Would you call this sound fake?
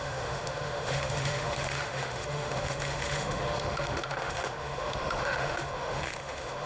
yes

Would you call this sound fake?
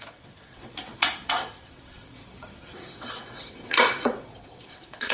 yes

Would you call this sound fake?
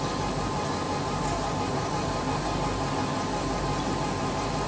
no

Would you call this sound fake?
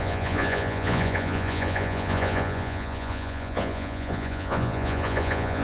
yes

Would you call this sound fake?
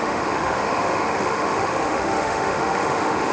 yes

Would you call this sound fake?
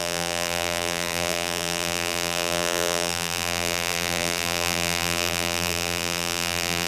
yes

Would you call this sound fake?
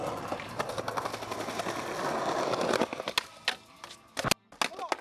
no